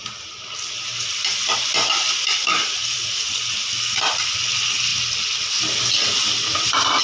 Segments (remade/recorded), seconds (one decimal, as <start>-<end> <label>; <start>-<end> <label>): 0.0-7.0 recorded